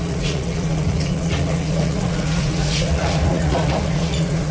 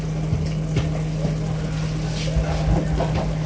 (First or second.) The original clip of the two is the second